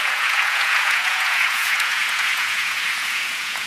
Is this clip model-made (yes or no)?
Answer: yes